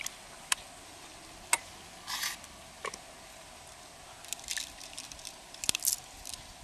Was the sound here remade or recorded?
recorded